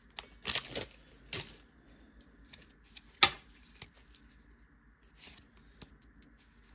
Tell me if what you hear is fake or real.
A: real